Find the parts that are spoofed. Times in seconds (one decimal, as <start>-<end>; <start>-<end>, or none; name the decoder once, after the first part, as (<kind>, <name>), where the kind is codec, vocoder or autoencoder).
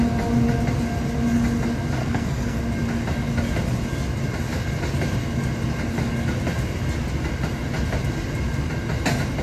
2.0-2.6 (codec, SNAC)